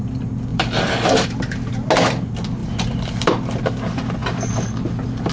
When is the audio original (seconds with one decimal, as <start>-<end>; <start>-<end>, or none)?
0.0-0.5; 1.7-2.6; 3.3-5.3

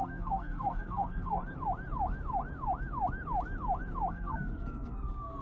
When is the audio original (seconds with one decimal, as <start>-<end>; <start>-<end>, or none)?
1.4-4.1